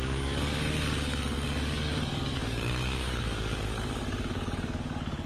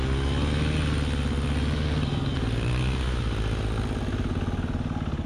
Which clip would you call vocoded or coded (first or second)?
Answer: first